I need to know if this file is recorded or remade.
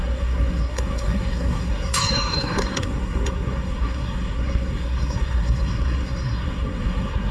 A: remade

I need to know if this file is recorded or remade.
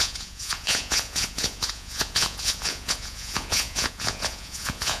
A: remade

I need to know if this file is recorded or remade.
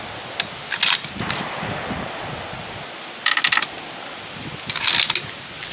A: recorded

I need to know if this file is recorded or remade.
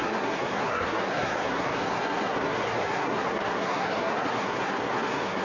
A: remade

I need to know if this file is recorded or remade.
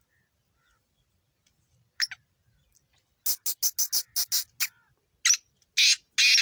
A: recorded